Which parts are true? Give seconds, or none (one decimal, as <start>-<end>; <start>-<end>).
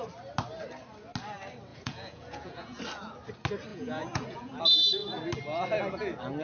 0.0-1.7; 2.8-3.7; 4.6-6.4